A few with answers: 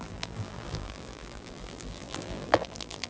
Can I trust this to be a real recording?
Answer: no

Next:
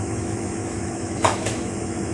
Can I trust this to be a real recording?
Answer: no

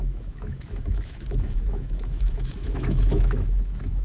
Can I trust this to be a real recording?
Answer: no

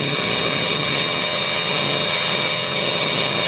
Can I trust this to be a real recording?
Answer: no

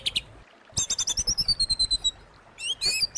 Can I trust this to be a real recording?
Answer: yes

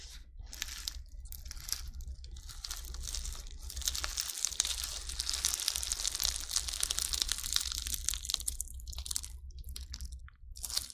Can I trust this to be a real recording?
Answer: yes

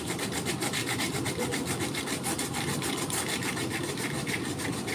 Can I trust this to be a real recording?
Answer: no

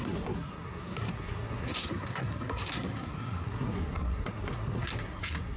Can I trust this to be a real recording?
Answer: no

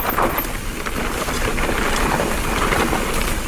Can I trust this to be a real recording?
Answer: yes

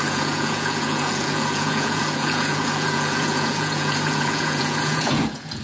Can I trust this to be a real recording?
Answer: no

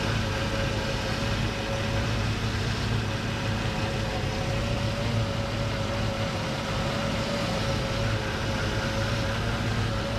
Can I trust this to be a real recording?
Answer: yes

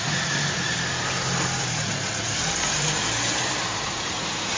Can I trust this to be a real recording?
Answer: no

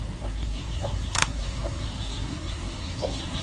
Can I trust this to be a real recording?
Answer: no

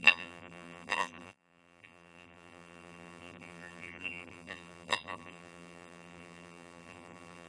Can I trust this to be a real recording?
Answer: no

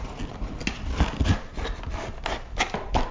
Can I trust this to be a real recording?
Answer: yes